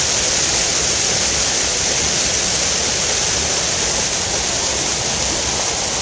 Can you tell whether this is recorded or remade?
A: recorded